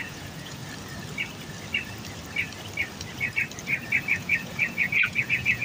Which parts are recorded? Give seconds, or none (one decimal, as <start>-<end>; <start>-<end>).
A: 0.6-4.0